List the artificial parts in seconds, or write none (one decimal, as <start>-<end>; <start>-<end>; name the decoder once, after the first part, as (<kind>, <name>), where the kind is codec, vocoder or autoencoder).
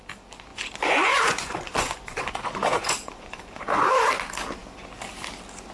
0.5-3.9 (vocoder, Vocos)